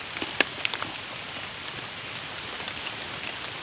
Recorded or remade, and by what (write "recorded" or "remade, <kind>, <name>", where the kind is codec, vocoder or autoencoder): recorded